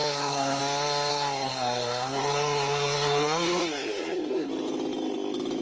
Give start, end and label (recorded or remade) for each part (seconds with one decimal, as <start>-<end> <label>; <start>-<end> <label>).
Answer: 0.0-0.6 remade; 0.6-1.1 recorded; 1.1-4.5 remade; 4.5-5.6 recorded